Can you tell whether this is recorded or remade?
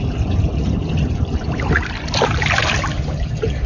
recorded